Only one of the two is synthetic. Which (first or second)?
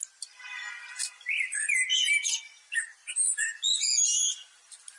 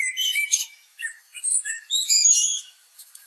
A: second